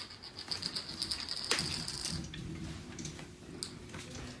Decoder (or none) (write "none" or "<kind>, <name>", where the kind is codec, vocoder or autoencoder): none